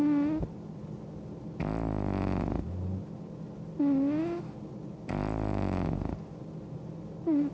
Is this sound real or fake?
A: real